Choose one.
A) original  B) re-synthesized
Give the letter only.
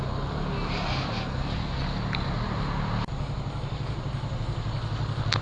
A